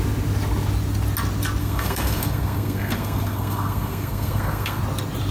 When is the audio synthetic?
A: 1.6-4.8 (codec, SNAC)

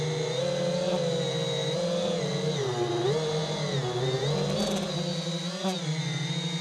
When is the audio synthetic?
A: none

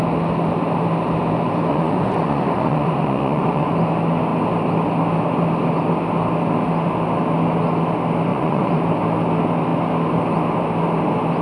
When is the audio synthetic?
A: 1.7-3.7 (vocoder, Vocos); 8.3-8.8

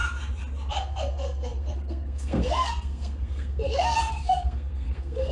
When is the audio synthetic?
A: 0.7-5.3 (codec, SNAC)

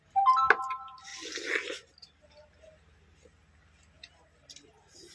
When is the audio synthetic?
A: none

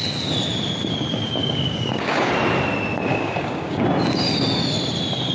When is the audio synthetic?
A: 1.4-2.3 (codec, DAC); 3.1-3.8

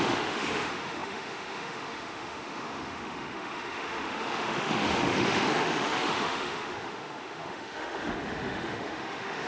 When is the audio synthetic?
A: 0.0-9.5 (autoencoder, DAC-VAE)